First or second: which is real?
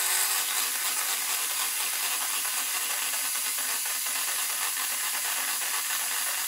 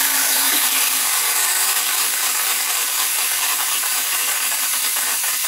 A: first